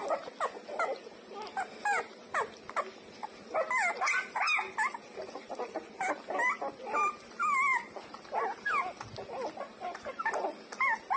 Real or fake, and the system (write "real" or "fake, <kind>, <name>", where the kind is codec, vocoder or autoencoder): real